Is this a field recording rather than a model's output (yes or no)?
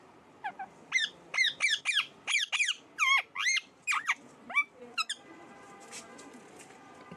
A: yes